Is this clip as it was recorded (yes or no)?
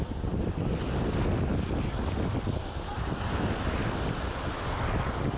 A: yes